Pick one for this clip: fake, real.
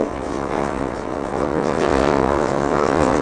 fake